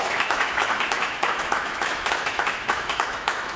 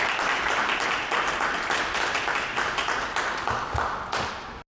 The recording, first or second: second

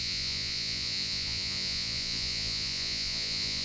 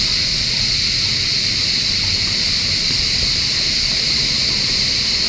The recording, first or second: second